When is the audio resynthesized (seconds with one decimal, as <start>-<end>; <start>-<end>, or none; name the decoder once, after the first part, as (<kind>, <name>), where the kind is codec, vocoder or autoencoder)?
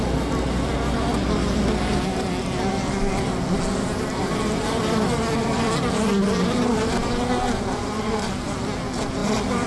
none